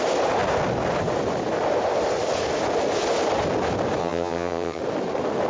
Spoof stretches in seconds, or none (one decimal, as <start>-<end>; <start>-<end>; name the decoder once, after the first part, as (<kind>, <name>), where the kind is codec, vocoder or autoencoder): 4.0-4.8 (vocoder, HiFi-GAN)